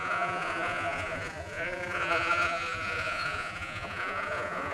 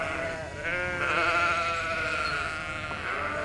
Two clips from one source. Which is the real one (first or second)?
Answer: second